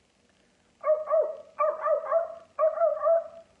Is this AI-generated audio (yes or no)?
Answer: no